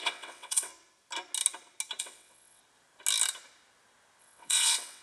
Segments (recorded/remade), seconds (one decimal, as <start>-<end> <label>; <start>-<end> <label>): 0.0-0.7 remade; 0.7-2.0 recorded; 2.0-2.6 remade; 2.6-4.2 recorded; 4.2-5.0 remade

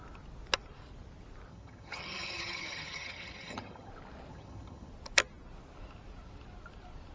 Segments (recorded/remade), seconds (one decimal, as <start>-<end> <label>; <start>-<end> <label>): 0.0-1.5 recorded; 1.5-3.9 remade; 3.9-4.3 recorded; 4.3-4.9 remade; 4.9-7.1 recorded

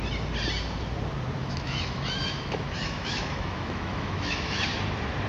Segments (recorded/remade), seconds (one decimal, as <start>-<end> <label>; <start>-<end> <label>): 0.0-1.4 recorded; 1.4-4.6 remade; 4.6-5.3 recorded

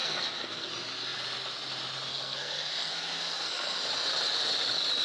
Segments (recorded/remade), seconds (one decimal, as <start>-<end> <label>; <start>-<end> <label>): 0.0-0.7 remade; 0.7-2.1 recorded; 2.1-3.8 remade; 3.8-5.0 recorded